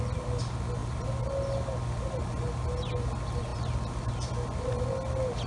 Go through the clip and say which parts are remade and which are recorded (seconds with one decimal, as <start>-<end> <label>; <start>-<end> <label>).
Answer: 0.0-5.5 recorded